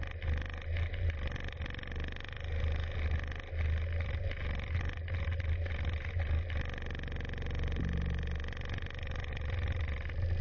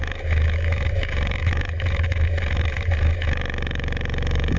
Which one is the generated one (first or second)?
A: second